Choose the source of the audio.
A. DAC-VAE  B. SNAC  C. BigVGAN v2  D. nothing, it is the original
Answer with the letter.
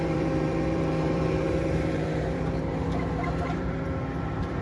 C